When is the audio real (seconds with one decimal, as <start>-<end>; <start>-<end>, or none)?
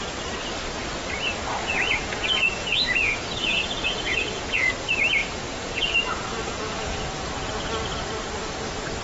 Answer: 0.0-1.6; 4.7-5.2; 7.1-9.0